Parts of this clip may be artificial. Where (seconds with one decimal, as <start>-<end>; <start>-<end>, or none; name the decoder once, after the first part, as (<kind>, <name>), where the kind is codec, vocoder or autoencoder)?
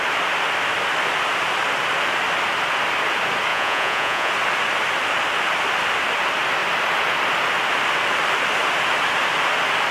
3.5-4.3 (vocoder, Vocos)